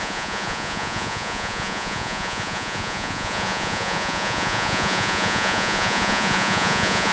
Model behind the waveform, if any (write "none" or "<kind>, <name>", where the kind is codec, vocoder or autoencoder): vocoder, Vocos